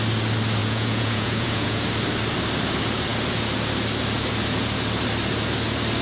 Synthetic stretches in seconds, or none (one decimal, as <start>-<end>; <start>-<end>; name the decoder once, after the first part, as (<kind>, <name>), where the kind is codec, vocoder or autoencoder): 0.6-1.8 (vocoder, Vocos)